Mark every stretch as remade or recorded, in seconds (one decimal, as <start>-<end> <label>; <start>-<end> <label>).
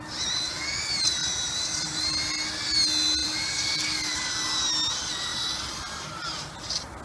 0.0-1.2 recorded; 1.2-2.2 remade; 2.2-3.2 recorded; 3.2-4.3 remade; 4.3-5.3 recorded; 5.3-7.0 remade